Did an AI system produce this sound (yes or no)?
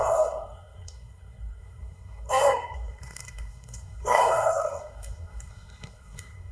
yes